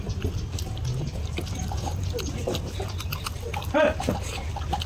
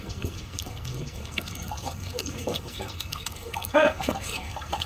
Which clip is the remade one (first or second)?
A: second